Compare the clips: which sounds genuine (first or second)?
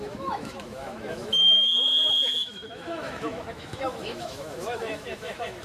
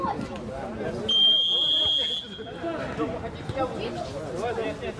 second